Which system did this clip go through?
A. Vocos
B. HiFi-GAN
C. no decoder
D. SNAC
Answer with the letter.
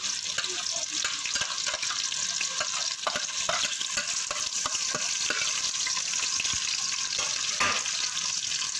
C